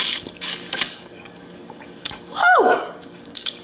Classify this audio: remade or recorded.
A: remade